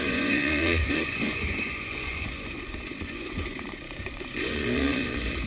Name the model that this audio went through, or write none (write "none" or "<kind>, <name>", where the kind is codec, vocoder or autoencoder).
vocoder, Vocos